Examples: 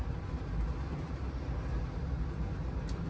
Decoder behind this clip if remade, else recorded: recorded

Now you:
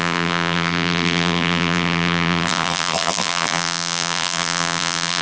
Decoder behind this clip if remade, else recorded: remade, vocoder, BigVGAN v2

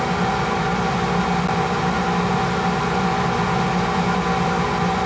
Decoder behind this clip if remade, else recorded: recorded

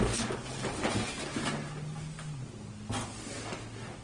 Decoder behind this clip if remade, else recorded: recorded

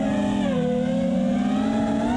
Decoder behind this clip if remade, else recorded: recorded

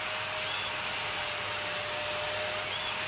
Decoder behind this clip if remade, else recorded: recorded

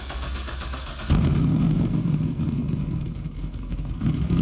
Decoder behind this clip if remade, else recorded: remade, codec, SNAC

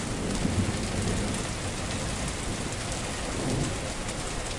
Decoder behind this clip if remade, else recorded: recorded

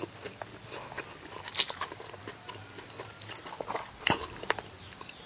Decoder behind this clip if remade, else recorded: recorded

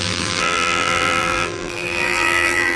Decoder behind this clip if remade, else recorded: remade, vocoder, BigVGAN v2